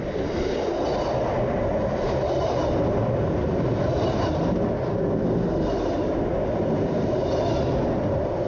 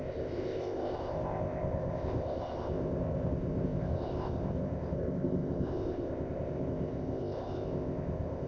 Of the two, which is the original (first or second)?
first